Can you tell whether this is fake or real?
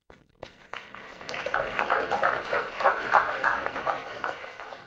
fake